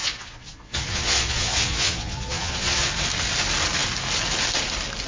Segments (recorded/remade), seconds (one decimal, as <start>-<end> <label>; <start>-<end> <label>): 0.0-2.9 remade; 2.9-5.1 recorded